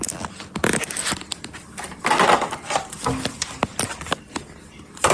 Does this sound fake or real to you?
real